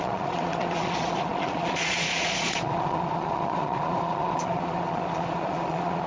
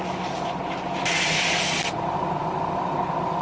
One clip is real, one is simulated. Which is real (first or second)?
second